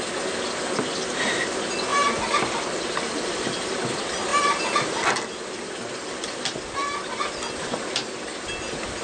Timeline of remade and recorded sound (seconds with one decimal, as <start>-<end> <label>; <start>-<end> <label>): 0.0-9.0 recorded